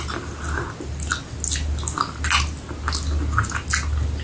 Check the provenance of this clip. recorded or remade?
recorded